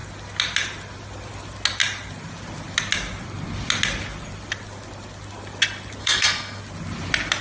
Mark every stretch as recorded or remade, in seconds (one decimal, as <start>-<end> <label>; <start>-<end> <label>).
0.0-6.0 recorded; 6.0-6.6 remade; 6.6-7.4 recorded